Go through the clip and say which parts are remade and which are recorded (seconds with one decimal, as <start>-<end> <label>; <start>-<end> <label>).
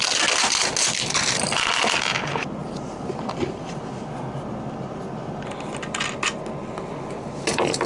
0.0-2.6 recorded; 2.6-5.5 remade; 5.5-7.9 recorded